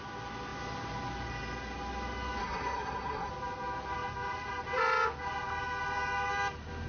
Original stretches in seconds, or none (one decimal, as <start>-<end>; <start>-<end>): 0.0-2.4; 3.3-6.9